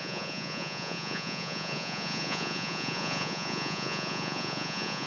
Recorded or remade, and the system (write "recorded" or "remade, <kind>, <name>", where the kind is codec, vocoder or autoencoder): remade, vocoder, Vocos